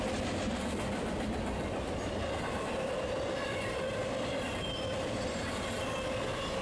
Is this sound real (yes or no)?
yes